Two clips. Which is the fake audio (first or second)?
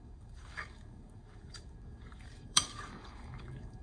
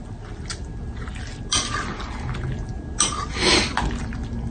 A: first